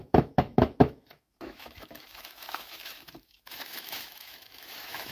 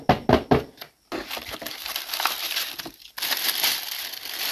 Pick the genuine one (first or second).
second